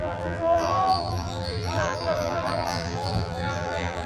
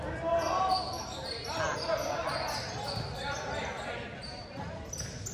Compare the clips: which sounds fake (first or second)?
first